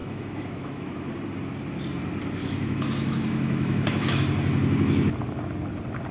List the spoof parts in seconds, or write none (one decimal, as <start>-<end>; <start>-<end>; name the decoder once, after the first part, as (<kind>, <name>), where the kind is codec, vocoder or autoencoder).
0.0-1.1 (autoencoder, DAC-VAE); 2.4-4.2